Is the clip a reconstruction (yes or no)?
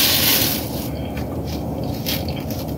no